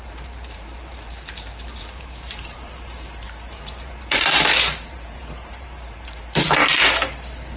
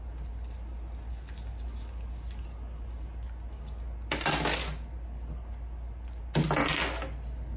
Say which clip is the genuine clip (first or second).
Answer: second